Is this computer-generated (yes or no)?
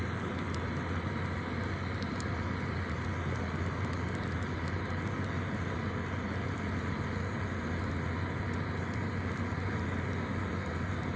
no